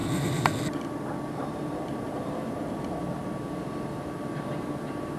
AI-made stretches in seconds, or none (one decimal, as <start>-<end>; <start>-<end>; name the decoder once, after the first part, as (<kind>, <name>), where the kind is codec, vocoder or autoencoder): 0.0-0.6 (vocoder, BigVGAN v2)